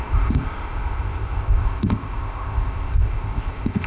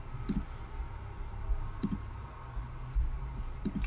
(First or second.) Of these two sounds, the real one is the second